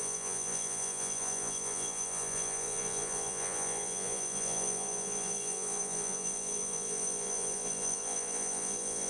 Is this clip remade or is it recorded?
remade